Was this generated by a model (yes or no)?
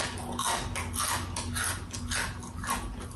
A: no